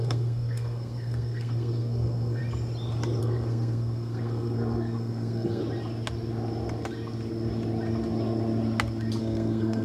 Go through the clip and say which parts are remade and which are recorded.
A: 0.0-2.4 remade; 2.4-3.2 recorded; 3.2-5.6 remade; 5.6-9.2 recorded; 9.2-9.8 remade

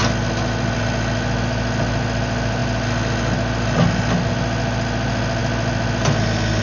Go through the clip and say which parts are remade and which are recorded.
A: 0.0-6.6 recorded

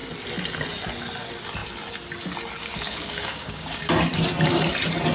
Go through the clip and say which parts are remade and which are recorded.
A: 0.0-2.6 recorded; 2.6-3.8 remade; 3.8-5.1 recorded

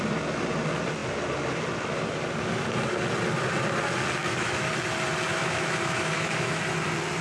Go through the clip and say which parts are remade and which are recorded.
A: 0.0-4.2 recorded; 4.2-4.7 remade; 4.7-5.3 recorded; 5.3-6.6 remade; 6.6-7.2 recorded

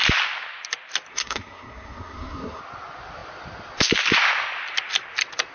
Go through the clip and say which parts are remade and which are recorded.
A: 0.0-1.1 recorded; 1.1-2.6 remade; 2.6-5.5 recorded